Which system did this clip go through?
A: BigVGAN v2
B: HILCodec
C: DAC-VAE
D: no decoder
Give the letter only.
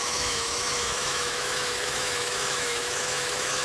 C